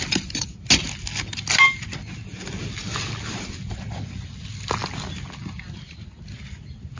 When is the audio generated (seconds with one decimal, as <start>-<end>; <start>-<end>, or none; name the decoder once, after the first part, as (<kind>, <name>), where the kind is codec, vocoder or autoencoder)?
none